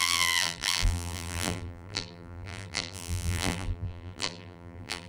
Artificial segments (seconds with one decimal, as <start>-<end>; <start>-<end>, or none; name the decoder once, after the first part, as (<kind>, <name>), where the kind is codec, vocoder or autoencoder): 0.0-5.1 (vocoder, BigVGAN v2)